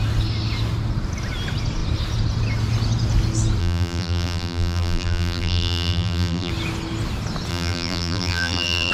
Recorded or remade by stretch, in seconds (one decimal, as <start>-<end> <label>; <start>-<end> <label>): 0.0-3.6 recorded; 3.6-6.5 remade; 6.5-7.5 recorded; 7.5-8.9 remade